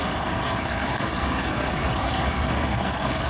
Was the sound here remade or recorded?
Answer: remade